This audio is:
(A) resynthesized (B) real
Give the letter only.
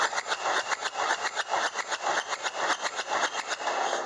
B